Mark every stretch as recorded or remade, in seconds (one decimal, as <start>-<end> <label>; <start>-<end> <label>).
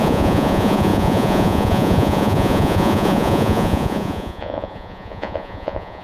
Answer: 0.0-6.0 remade